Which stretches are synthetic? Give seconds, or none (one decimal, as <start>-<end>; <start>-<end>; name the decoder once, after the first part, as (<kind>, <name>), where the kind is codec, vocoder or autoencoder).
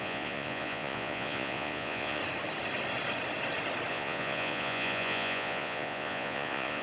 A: 0.0-2.2 (vocoder, Vocos); 3.9-6.8